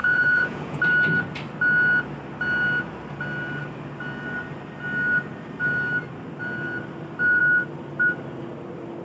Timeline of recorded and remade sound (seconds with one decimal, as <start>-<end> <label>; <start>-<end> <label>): 0.0-0.8 remade; 0.8-9.0 recorded